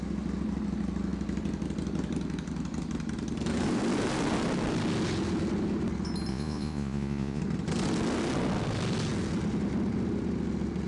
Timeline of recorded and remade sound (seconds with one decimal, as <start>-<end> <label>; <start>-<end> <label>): 0.0-6.3 recorded; 6.3-7.4 remade; 7.4-10.9 recorded